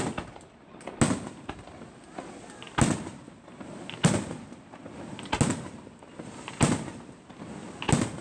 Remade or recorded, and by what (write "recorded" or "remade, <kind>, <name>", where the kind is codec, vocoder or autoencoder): recorded